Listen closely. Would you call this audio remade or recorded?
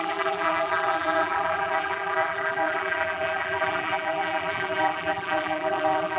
remade